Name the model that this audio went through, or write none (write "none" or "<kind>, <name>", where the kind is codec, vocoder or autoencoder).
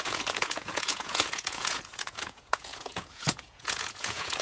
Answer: vocoder, Vocos